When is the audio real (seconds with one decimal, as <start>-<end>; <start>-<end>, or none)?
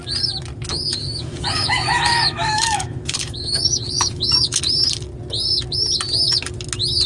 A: 0.0-0.7; 4.6-7.1